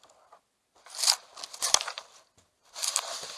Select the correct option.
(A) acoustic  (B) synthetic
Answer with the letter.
A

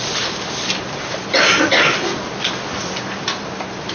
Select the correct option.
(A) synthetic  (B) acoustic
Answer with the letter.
A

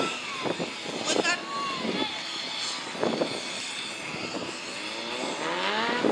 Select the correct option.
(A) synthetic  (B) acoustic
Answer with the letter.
B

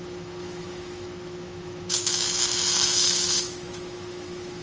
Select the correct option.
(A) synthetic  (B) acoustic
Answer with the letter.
A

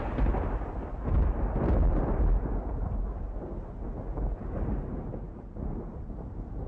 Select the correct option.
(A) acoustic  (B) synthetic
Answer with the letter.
A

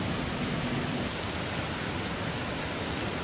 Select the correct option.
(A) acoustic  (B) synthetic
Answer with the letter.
A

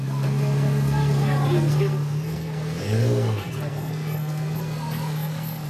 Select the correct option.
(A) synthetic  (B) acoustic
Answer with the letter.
A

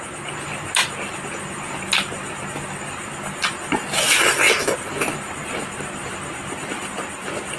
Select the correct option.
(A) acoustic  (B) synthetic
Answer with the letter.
A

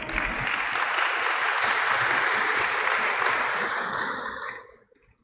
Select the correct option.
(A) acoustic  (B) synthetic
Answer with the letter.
A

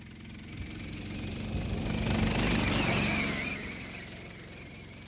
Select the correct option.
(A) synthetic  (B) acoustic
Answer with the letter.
B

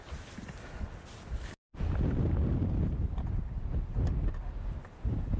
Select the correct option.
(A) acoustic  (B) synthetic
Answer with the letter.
A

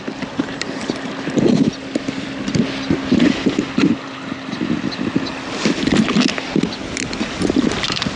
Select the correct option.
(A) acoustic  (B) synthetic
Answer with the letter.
A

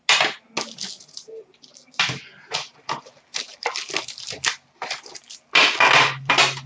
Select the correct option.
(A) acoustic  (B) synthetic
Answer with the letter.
A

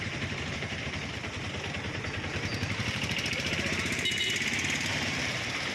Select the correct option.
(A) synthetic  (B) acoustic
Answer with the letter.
A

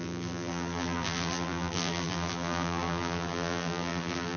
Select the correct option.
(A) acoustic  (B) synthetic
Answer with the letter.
B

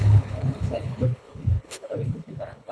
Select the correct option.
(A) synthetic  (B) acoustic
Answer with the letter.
A